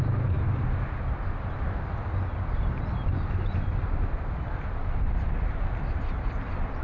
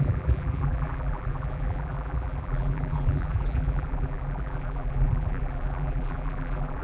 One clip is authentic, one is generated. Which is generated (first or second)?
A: second